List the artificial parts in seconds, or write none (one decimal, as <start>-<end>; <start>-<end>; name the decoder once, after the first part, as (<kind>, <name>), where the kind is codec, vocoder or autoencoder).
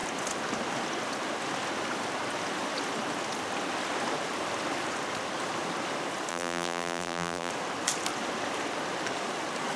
6.3-7.5 (vocoder, BigVGAN v2)